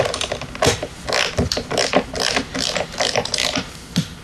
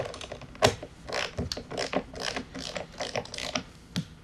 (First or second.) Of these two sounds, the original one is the second